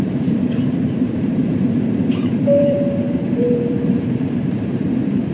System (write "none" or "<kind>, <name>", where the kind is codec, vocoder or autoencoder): vocoder, BigVGAN v2